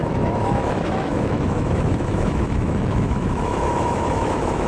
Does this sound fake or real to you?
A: fake